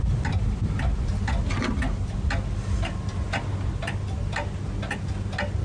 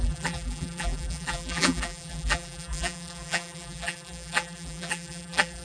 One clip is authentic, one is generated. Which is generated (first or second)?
second